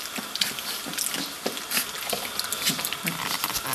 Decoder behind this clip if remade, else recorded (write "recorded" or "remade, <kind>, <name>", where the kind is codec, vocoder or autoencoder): recorded